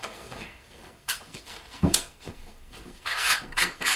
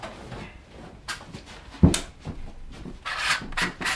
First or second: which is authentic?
second